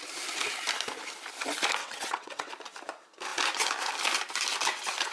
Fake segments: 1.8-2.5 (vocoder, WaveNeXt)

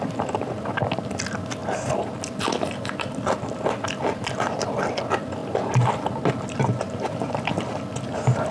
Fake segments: none